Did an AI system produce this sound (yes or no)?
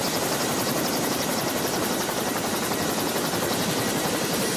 no